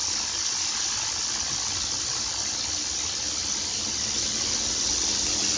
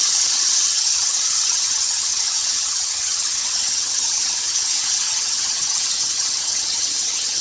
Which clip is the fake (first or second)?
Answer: second